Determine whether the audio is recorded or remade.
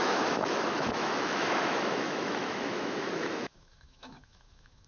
remade